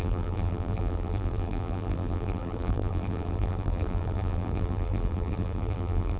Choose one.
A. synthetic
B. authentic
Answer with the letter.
A